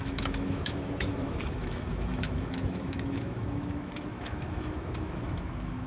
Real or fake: fake